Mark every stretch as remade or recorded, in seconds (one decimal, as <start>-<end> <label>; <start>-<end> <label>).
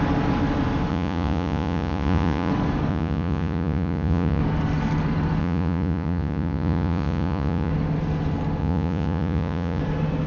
0.0-0.9 recorded; 0.9-2.5 remade; 2.5-2.9 recorded; 2.9-4.4 remade; 4.4-5.4 recorded; 5.4-7.7 remade; 7.7-8.6 recorded; 8.6-9.8 remade; 9.8-10.3 recorded